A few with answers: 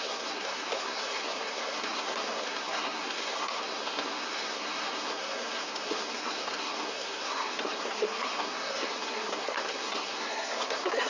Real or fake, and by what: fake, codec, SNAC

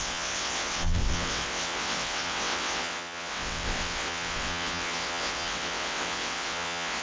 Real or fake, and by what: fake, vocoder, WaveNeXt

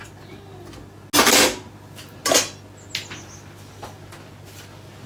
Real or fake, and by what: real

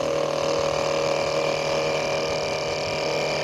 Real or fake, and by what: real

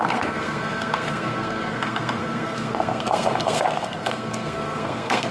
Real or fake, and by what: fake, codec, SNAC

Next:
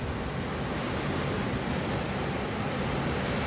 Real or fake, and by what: real